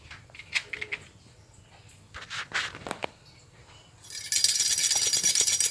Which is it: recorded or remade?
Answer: recorded